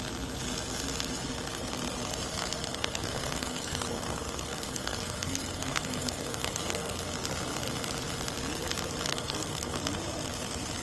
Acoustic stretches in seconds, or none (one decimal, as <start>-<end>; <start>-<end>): 0.0-2.7; 7.0-9.1; 9.8-10.8